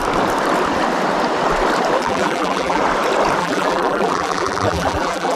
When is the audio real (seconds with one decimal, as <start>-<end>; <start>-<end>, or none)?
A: 0.0-2.0; 2.8-3.4